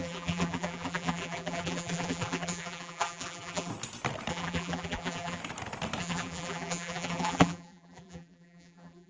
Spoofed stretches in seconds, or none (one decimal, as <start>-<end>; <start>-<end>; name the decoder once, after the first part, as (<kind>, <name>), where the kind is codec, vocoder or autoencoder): 0.0-3.7 (vocoder, BigVGAN v2); 4.3-5.4; 6.0-9.1